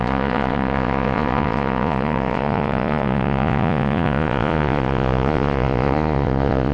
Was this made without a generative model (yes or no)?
no